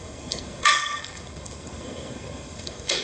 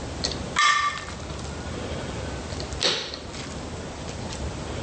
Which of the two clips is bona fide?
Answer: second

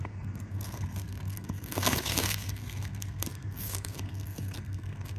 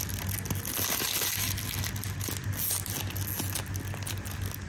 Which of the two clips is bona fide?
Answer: second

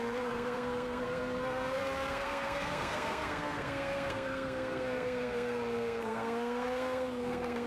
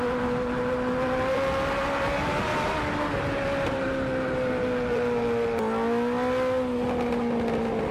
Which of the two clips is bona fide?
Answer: second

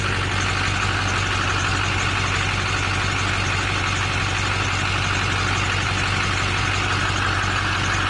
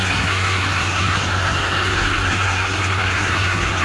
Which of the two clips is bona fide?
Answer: first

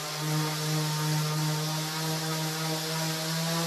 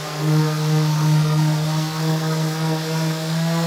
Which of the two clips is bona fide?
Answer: first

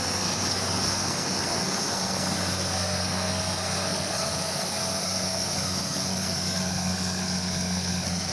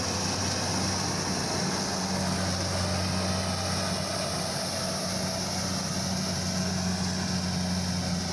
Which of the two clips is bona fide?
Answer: second